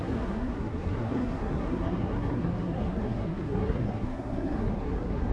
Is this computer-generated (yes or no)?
yes